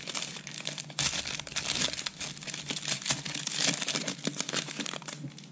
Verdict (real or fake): real